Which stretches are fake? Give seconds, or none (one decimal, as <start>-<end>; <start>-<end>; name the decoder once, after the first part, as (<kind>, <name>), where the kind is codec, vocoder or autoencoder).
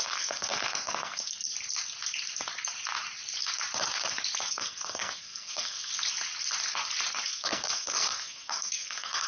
0.0-1.5 (codec, SNAC); 4.5-5.9; 7.3-9.3